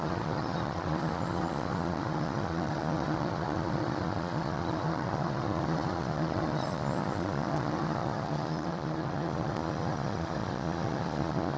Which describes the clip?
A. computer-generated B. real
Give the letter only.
A